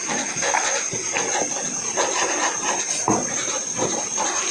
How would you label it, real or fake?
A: real